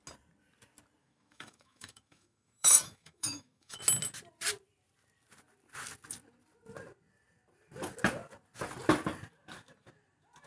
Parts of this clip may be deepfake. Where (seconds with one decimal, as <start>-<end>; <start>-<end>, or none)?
1.0-3.8